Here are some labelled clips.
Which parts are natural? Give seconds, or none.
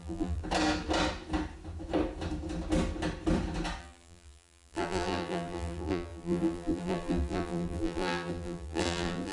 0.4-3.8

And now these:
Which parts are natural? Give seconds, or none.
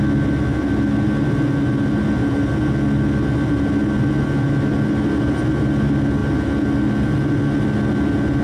0.0-8.4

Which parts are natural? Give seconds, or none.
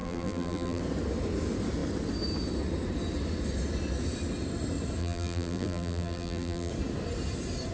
0.8-5.0; 6.7-7.7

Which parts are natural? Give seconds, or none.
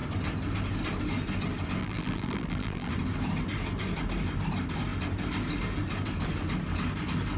0.0-1.8; 2.9-7.4